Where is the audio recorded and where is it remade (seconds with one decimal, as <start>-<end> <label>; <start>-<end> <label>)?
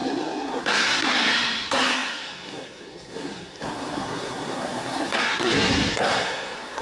0.0-6.8 remade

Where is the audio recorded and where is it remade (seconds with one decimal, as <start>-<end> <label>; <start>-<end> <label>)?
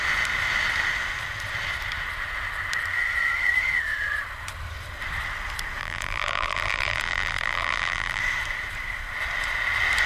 0.0-5.8 recorded; 5.8-8.2 remade; 8.2-10.1 recorded